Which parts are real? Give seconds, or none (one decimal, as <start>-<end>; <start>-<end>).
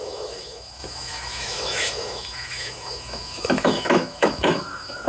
none